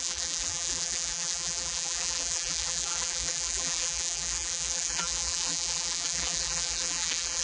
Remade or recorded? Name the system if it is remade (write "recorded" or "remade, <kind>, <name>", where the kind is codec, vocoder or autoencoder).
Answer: remade, vocoder, BigVGAN v2